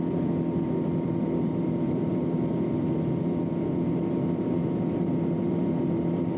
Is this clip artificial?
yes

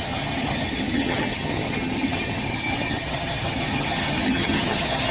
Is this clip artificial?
yes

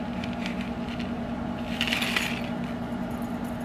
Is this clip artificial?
no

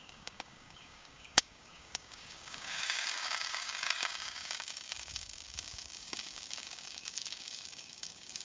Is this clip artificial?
yes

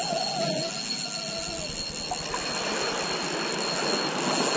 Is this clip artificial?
no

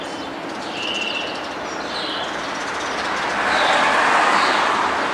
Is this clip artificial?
no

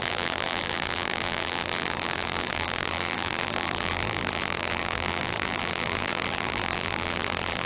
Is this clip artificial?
yes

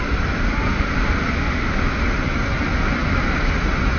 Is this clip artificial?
no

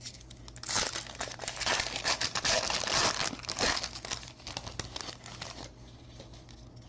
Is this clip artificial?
no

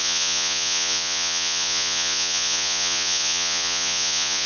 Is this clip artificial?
yes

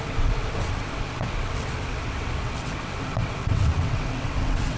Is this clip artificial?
yes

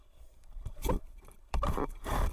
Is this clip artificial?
yes